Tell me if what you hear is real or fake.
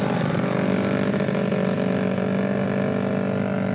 real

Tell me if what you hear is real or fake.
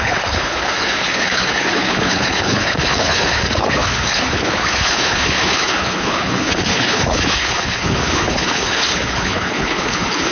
fake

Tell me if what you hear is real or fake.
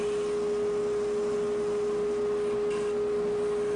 real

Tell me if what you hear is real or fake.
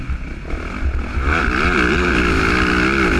real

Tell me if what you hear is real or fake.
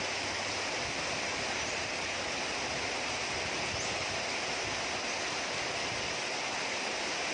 real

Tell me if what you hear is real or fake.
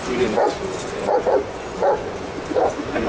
fake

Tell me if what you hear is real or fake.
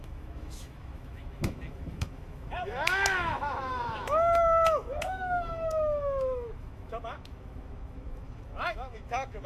fake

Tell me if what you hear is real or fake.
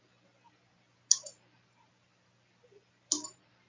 real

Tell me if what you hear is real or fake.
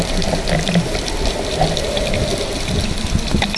real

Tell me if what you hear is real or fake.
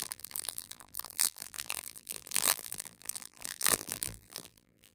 fake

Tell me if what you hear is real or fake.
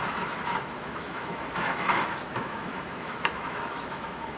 fake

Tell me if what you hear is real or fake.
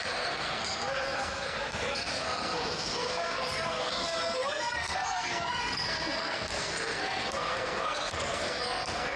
fake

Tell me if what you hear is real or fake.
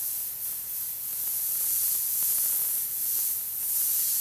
fake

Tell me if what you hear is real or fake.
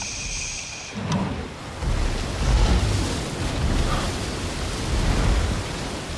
real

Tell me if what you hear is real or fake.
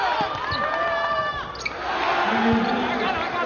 real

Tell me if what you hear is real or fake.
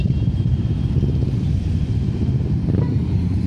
fake